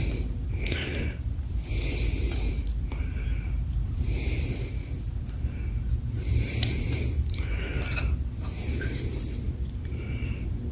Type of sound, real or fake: fake